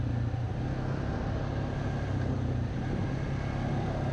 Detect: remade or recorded recorded